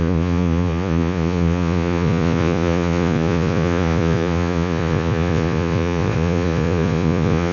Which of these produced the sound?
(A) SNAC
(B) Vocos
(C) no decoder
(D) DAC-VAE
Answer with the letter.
B